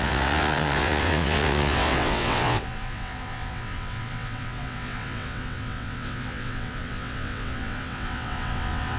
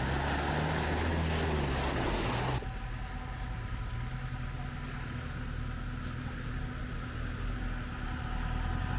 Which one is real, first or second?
second